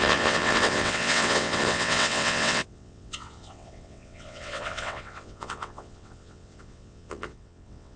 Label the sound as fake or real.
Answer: fake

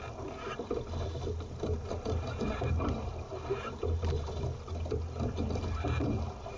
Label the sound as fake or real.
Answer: real